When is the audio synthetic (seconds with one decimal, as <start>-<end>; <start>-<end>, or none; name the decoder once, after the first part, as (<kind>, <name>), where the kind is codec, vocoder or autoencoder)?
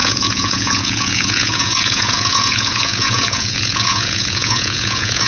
0.0-5.3 (vocoder, Vocos)